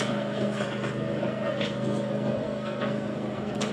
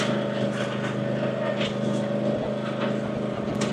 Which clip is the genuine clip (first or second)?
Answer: second